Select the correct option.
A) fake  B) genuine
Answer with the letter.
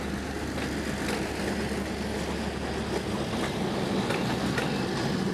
B